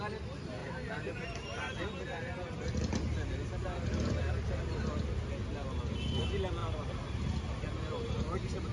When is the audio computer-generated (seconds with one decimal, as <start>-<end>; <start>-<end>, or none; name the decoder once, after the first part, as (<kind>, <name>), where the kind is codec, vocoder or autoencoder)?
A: 0.6-1.9 (vocoder, BigVGAN v2); 6.6-7.2